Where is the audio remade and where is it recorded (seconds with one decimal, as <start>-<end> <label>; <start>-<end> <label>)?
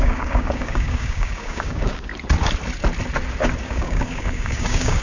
0.0-2.1 remade; 2.1-3.6 recorded; 3.6-5.0 remade